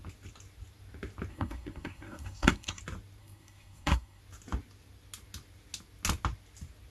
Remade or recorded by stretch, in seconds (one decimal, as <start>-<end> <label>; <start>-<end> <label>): 0.0-1.3 recorded; 1.3-2.8 remade; 2.8-3.2 recorded; 3.2-4.2 remade; 4.2-6.9 recorded